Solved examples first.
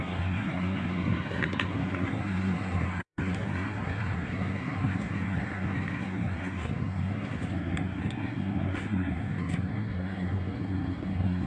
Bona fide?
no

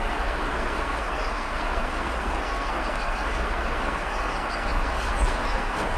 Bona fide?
no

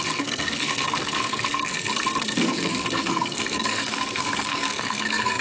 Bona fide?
no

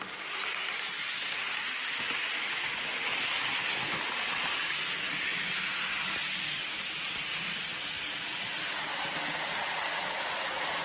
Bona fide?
yes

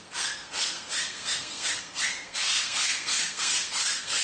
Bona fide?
no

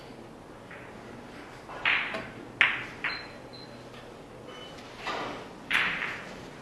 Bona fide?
yes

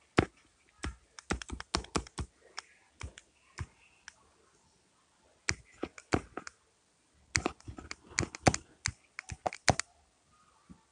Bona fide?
yes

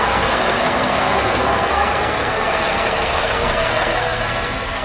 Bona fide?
no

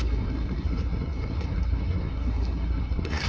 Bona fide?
no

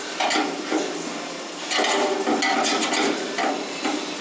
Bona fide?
yes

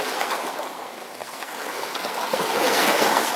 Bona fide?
no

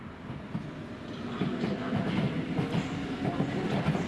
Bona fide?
yes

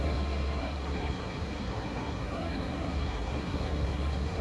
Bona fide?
no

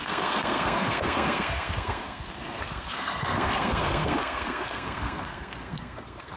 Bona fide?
no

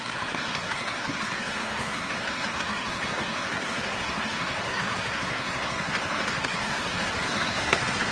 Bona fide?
no